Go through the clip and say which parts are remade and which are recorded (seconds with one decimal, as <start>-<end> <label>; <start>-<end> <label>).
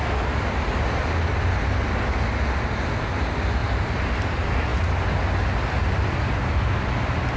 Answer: 0.0-7.4 recorded